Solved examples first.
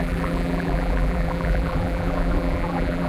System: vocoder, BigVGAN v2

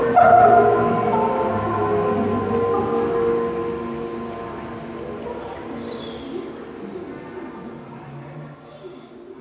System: none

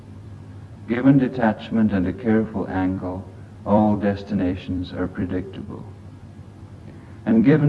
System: vocoder, BigVGAN v2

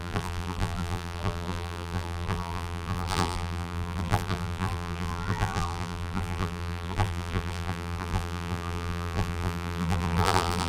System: vocoder, BigVGAN v2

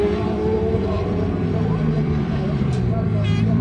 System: vocoder, BigVGAN v2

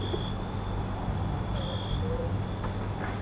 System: none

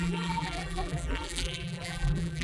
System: vocoder, BigVGAN v2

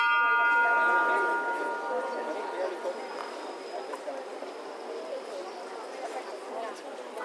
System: none